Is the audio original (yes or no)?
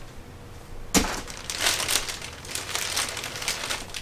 yes